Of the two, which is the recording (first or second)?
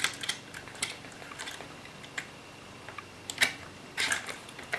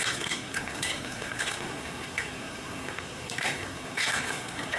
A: first